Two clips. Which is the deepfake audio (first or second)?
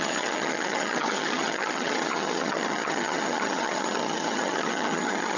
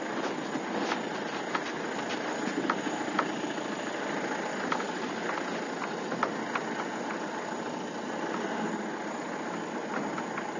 first